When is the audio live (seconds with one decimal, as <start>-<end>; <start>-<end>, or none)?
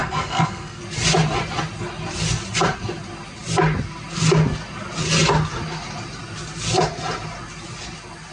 0.8-8.3